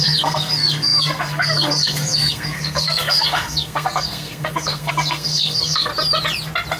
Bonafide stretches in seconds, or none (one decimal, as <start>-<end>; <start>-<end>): 5.9-6.8